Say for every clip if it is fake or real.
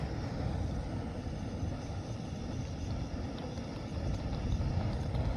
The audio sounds real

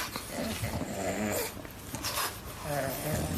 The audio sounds real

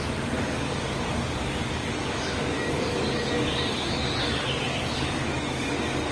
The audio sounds fake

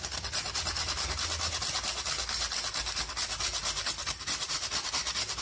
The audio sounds real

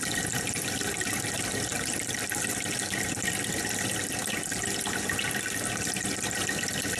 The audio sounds real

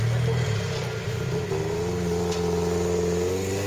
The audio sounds real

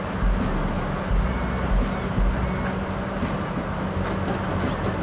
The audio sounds real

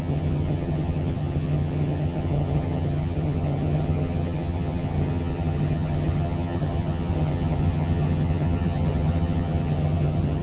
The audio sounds fake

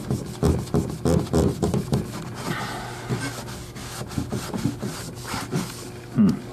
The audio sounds real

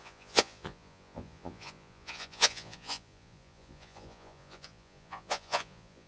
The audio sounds fake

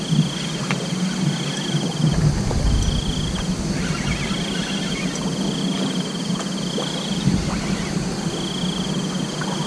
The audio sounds real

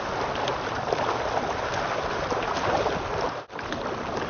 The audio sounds real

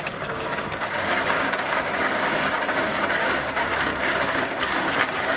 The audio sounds fake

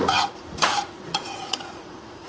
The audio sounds fake